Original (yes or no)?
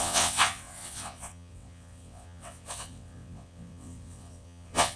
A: no